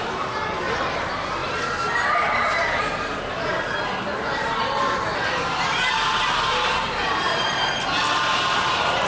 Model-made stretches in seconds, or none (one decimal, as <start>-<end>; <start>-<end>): none